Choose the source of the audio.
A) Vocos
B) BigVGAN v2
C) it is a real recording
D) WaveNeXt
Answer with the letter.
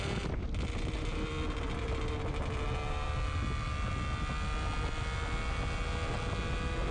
C